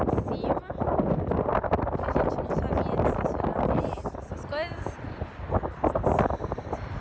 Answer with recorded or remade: recorded